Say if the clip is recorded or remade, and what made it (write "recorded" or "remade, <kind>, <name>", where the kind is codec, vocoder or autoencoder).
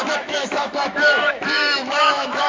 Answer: remade, autoencoder, DAC-VAE